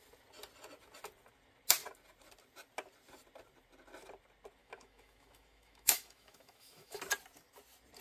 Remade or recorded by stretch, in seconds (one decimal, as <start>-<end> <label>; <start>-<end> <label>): 0.0-4.6 recorded; 4.6-7.0 remade; 7.0-8.0 recorded